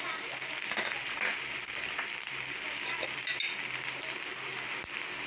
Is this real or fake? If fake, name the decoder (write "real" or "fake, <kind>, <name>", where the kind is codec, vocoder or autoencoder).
real